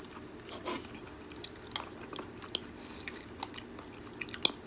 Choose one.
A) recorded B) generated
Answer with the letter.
A